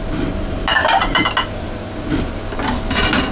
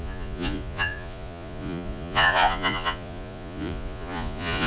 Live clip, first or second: first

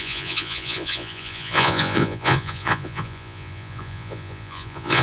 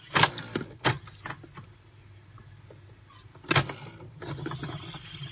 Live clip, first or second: second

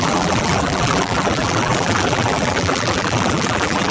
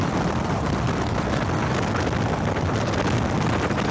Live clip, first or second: second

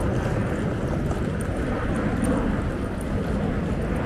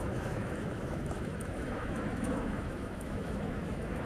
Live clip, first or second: first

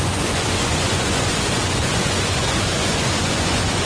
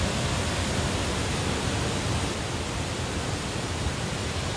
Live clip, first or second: second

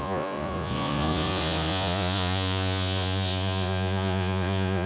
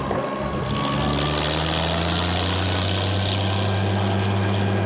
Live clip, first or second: second